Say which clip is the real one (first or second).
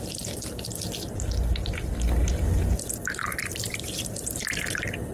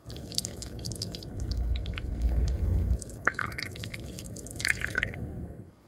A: first